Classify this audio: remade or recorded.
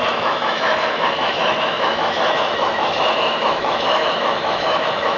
remade